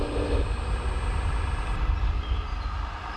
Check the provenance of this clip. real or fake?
real